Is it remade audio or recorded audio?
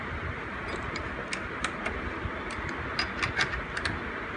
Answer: recorded